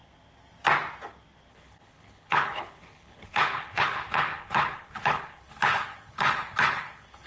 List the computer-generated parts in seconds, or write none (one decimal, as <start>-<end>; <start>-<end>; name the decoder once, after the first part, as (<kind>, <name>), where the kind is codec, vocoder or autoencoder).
1.5-7.3 (codec, HILCodec)